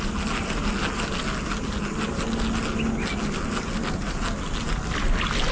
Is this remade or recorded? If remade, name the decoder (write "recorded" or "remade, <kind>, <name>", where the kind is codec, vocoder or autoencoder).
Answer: recorded